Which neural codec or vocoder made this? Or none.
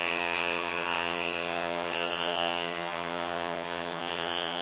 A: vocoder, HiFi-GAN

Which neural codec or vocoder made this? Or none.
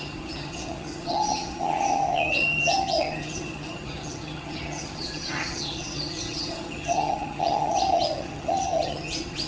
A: vocoder, HiFi-GAN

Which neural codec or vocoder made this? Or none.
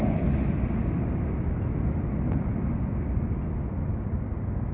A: none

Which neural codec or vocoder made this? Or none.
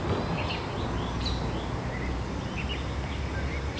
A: none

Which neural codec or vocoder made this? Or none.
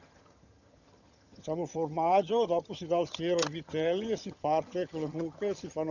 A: vocoder, HiFi-GAN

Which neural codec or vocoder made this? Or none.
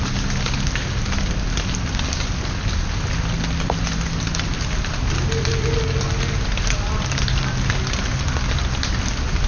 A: none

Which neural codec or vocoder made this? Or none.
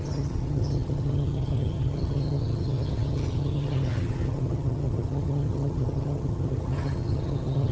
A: vocoder, HiFi-GAN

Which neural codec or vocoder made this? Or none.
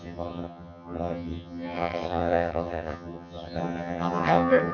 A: vocoder, HiFi-GAN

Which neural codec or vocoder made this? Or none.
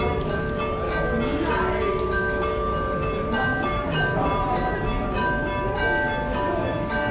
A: none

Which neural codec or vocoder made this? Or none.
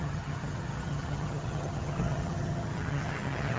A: vocoder, HiFi-GAN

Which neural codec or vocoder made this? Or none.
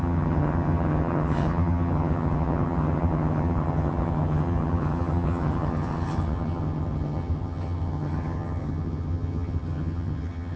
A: vocoder, HiFi-GAN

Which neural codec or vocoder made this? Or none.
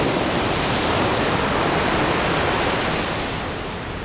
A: none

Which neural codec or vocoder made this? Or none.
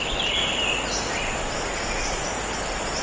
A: none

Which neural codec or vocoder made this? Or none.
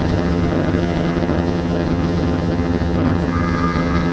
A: vocoder, HiFi-GAN